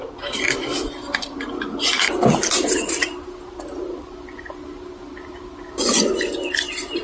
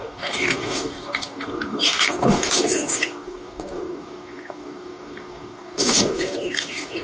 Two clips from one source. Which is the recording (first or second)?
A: first